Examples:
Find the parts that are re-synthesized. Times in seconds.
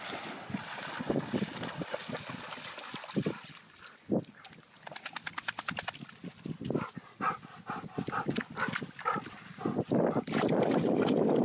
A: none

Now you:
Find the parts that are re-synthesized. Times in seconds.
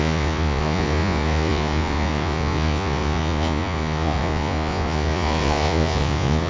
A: 0.0-6.5 (vocoder, Vocos)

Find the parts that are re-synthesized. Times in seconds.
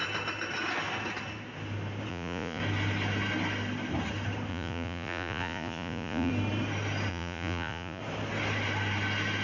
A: 2.1-2.6 (vocoder, Vocos); 4.5-6.3; 7.1-8.0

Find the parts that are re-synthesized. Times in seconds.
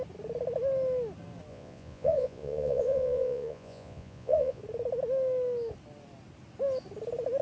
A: 1.5-4.6 (vocoder, Vocos)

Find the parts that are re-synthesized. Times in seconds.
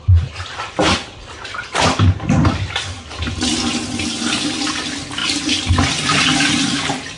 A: none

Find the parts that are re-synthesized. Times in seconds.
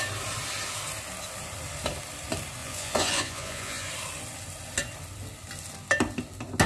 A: 2.6-3.9 (vocoder, Vocos)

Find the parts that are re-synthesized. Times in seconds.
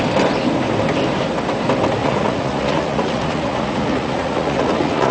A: 2.0-5.1 (vocoder, Vocos)